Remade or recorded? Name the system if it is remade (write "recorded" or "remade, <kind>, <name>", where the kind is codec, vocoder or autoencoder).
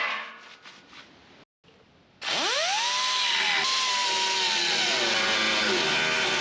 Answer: recorded